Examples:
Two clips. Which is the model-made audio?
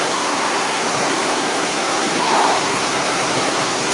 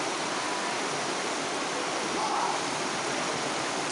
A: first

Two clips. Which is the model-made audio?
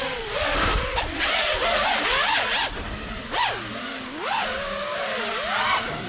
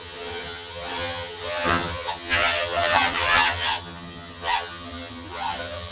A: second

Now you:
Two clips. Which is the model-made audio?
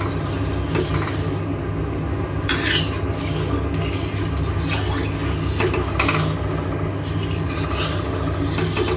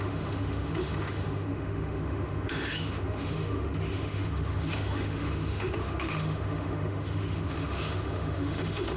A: second